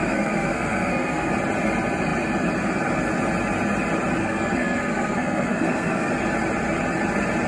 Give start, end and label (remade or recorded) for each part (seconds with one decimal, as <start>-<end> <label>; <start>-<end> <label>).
0.0-1.3 remade; 1.3-4.2 recorded; 4.2-6.1 remade; 6.1-7.5 recorded